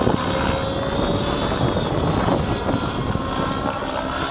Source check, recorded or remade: recorded